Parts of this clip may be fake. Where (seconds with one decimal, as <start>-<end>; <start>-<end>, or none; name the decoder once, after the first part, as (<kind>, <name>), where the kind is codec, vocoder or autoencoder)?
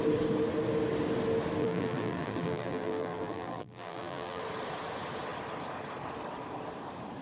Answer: 1.6-4.4 (vocoder, BigVGAN v2)